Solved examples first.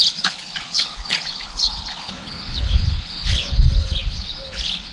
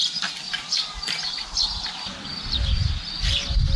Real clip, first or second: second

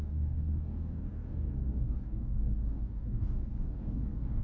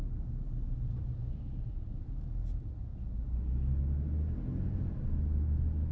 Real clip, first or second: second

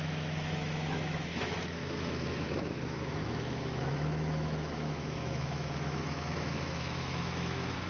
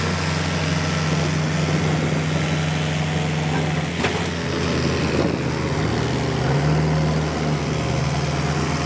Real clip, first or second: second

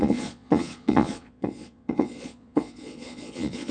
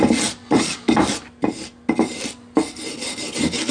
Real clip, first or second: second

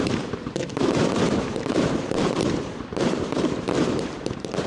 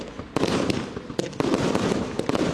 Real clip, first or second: second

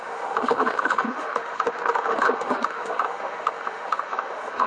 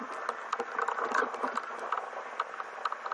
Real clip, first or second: second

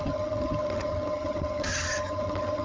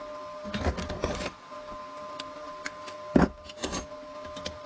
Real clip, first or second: second